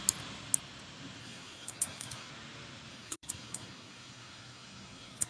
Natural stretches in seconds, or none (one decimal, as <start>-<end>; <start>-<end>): 0.0-1.2; 2.3-2.9